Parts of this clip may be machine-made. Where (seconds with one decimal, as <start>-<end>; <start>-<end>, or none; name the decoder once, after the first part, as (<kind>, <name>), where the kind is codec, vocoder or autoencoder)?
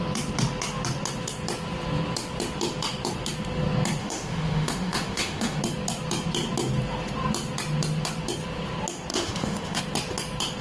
4.0-5.6 (autoencoder, DAC-VAE); 9.1-9.8